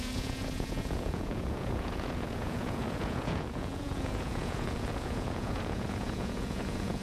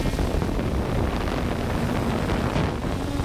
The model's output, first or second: first